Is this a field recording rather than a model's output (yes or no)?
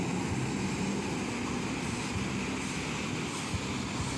yes